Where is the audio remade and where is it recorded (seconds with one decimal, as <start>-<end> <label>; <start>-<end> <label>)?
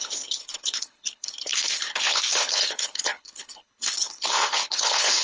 0.0-5.2 remade